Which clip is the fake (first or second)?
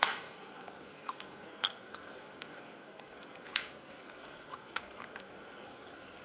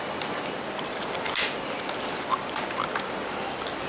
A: first